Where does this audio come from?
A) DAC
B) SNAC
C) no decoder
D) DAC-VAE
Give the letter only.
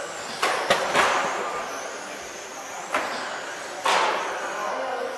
C